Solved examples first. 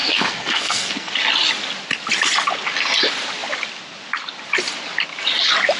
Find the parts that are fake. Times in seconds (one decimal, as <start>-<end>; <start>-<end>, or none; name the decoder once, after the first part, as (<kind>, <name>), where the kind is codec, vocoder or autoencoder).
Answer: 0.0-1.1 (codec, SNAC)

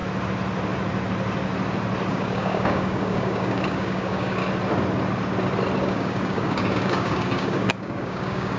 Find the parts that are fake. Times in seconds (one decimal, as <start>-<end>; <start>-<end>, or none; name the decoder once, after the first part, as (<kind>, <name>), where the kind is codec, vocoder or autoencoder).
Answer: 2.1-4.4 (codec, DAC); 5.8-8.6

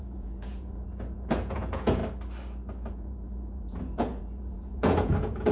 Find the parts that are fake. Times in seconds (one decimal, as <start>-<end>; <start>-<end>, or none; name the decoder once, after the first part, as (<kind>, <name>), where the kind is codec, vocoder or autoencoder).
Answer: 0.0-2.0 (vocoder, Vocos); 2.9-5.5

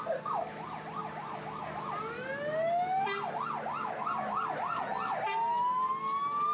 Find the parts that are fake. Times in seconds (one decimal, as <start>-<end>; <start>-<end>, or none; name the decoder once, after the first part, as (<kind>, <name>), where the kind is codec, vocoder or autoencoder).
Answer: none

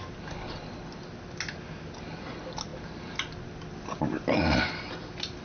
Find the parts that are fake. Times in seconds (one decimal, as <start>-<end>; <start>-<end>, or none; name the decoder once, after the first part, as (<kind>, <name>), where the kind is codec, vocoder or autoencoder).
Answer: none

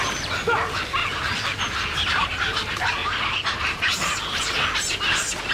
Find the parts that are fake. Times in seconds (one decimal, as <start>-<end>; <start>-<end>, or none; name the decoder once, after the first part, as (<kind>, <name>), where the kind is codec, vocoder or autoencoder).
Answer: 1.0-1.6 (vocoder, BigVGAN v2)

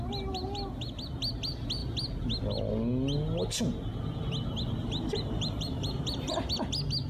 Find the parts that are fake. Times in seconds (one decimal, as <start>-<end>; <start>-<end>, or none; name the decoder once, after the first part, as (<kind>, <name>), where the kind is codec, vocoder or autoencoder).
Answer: 4.8-6.5 (vocoder, BigVGAN v2)